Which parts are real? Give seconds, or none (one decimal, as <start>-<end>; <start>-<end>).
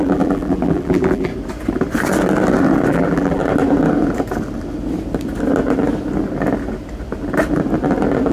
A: 1.3-2.9; 3.4-8.3